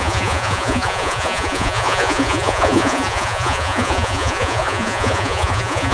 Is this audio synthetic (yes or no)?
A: yes